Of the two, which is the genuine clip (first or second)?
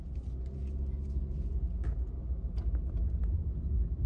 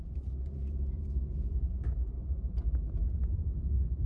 first